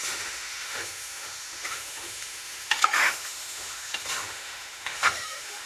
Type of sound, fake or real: fake